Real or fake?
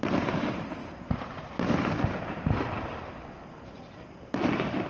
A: real